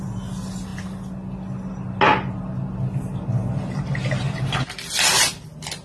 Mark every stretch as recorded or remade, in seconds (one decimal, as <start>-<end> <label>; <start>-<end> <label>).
0.0-5.8 recorded